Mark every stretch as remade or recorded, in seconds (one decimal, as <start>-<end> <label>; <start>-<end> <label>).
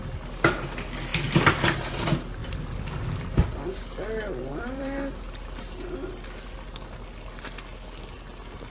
0.0-1.1 recorded; 1.1-1.8 remade; 1.8-2.4 recorded; 2.4-3.4 remade; 3.4-4.5 recorded; 4.5-5.2 remade; 5.2-8.7 recorded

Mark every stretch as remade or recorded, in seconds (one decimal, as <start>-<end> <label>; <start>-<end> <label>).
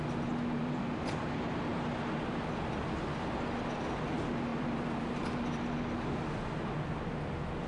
0.0-0.6 recorded; 0.6-1.2 remade; 1.2-4.5 recorded; 4.5-6.9 remade; 6.9-7.7 recorded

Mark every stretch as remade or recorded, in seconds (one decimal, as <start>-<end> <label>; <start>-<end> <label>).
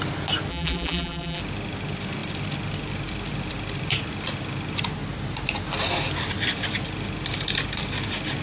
0.0-0.5 recorded; 0.5-1.4 remade; 1.4-8.4 recorded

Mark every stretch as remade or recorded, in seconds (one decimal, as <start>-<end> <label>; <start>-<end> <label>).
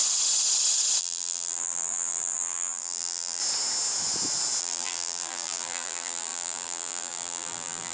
0.0-1.0 recorded; 1.0-3.4 remade; 3.4-4.6 recorded; 4.6-7.9 remade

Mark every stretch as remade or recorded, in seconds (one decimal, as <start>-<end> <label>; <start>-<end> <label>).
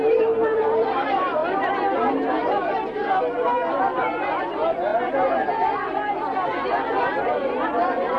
0.0-1.4 remade; 1.4-3.8 recorded; 3.8-4.9 remade; 4.9-5.5 recorded; 5.5-6.5 remade; 6.5-8.2 recorded